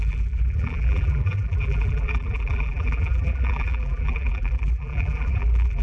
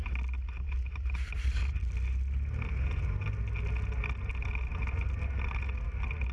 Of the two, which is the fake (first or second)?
first